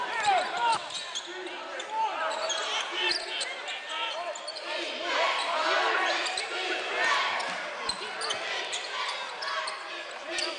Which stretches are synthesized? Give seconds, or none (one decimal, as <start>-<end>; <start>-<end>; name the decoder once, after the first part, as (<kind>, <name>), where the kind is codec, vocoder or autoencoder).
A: 0.0-0.7 (vocoder, BigVGAN v2); 2.3-10.6

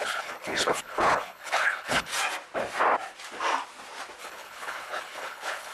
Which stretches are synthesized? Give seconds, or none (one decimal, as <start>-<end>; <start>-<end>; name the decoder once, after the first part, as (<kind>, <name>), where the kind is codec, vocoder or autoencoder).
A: 0.0-2.1 (codec, HILCodec); 4.2-5.7